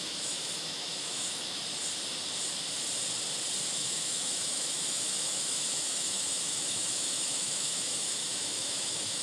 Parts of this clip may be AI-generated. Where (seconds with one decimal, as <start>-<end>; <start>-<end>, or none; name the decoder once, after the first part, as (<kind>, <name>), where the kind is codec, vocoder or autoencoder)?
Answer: 0.0-1.6 (autoencoder, DAC-VAE); 3.7-9.2